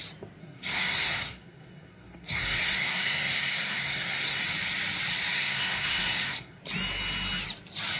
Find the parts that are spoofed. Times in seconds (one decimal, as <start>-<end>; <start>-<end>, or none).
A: 0.4-4.4; 5.3-6.6